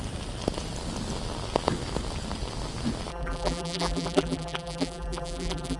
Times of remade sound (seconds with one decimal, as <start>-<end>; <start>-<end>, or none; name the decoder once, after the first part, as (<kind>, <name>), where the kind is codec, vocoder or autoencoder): 3.1-5.8 (vocoder, BigVGAN v2)